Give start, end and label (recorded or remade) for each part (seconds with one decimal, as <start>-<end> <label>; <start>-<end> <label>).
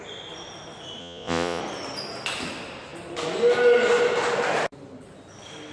0.0-1.0 recorded; 1.0-1.6 remade; 1.6-5.7 recorded